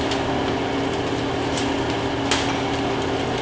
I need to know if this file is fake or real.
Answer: real